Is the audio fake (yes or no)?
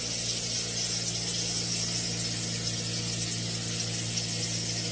no